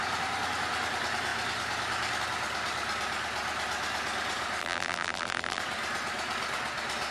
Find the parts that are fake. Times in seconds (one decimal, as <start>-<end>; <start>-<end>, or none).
4.6-5.6